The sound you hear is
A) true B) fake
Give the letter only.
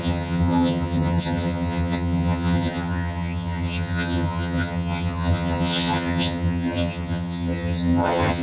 B